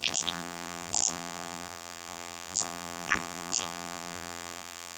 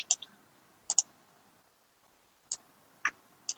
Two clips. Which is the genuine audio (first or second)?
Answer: second